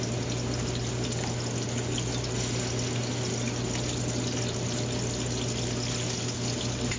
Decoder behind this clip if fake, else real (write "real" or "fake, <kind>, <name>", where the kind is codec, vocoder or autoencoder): real